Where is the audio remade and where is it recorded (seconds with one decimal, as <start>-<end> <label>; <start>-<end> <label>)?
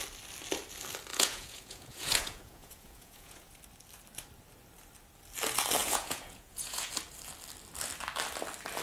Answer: 0.0-1.1 recorded; 1.1-3.5 remade; 3.5-5.8 recorded; 5.8-6.9 remade; 6.9-8.8 recorded